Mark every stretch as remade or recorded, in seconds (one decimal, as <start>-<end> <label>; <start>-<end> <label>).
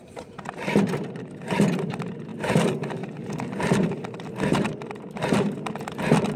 0.0-2.3 recorded; 2.3-4.0 remade; 4.0-6.4 recorded